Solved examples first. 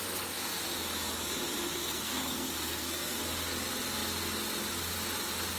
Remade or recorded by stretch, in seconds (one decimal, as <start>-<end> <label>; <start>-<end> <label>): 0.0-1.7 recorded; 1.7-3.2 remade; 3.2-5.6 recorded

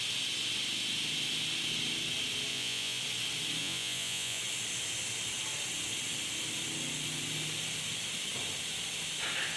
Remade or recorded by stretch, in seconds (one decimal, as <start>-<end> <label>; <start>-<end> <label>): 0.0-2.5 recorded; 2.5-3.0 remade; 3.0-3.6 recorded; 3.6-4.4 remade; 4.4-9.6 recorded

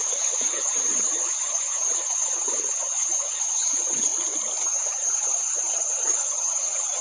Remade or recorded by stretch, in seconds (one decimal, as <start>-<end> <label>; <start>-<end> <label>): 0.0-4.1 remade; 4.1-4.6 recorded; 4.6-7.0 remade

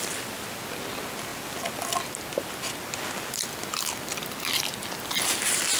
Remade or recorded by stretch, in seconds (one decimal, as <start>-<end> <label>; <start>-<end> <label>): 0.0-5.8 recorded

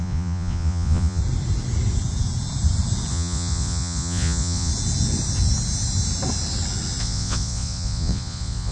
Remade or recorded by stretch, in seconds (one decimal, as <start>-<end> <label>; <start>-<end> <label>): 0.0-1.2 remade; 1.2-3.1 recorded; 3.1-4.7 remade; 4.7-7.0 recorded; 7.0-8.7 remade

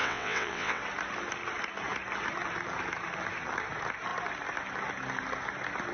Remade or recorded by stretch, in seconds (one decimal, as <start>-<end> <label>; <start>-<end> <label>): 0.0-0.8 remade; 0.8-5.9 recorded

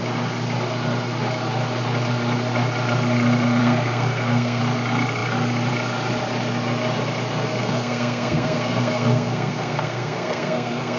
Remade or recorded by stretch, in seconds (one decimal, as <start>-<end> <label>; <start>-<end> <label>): 0.0-3.6 recorded; 3.6-4.6 remade; 4.6-7.6 recorded; 7.6-11.0 remade